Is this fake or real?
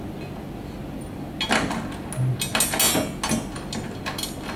real